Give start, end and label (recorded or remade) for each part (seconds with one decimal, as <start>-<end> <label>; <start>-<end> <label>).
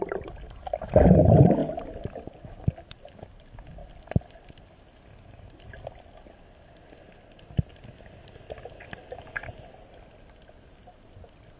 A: 0.0-11.6 recorded